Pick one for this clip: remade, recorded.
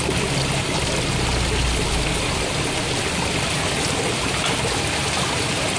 recorded